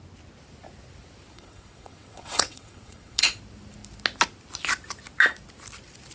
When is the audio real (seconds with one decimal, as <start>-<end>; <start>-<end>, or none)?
0.0-1.3; 3.4-6.1